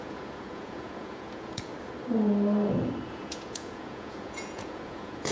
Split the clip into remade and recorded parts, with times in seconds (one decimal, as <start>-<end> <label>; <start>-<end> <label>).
0.0-1.7 remade; 1.7-3.1 recorded; 3.1-5.3 remade